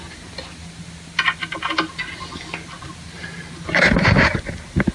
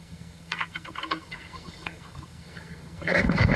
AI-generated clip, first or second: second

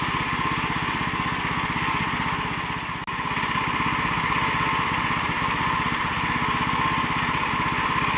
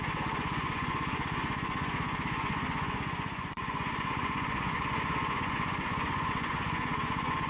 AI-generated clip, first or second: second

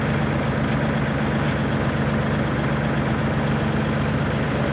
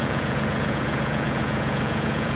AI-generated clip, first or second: second